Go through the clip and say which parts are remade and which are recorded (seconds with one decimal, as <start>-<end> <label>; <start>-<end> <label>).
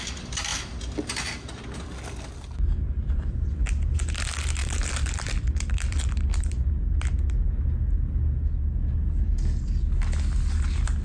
0.0-3.0 recorded; 3.0-3.5 remade; 3.5-4.6 recorded; 4.6-6.8 remade; 6.8-11.0 recorded